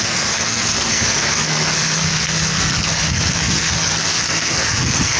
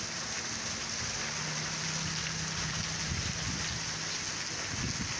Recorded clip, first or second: second